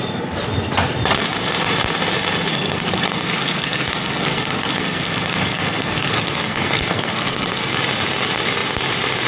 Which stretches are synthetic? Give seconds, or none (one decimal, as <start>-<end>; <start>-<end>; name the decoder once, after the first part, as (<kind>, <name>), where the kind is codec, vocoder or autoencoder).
2.5-7.6 (codec, SNAC)